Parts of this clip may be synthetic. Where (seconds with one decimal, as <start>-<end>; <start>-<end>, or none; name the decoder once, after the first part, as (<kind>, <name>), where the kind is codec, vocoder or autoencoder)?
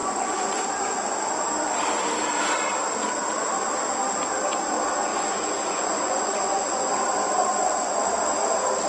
0.0-0.6 (vocoder, Vocos); 5.1-6.9; 7.4-8.0